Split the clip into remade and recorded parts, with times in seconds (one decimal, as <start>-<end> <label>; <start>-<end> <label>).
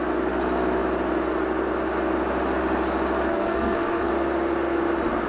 0.0-3.3 recorded; 3.3-4.1 remade; 4.1-5.3 recorded